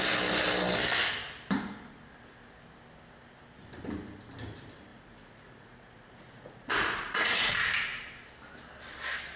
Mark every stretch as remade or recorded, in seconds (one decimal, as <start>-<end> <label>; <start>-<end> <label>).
0.0-4.9 recorded; 4.9-7.5 remade; 7.5-9.4 recorded